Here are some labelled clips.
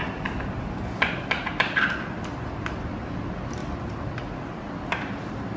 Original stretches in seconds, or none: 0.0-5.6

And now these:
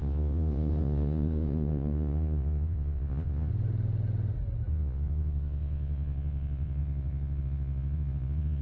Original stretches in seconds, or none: 3.5-4.7

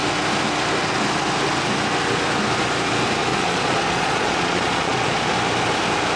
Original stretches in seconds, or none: 0.0-3.3; 5.3-6.2

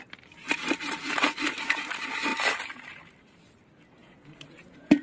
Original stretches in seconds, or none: 0.0-4.0

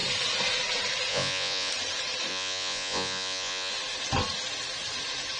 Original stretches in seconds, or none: 0.0-1.1; 1.7-2.3; 3.7-5.4